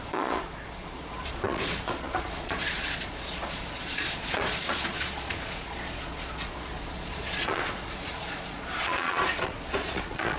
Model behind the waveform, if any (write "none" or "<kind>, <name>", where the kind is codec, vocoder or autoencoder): vocoder, Vocos